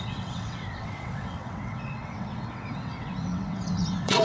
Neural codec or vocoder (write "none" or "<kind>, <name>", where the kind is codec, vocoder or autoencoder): vocoder, WaveNeXt